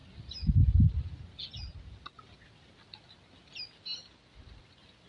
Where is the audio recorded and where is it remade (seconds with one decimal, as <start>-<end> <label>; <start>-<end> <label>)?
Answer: 0.0-5.1 recorded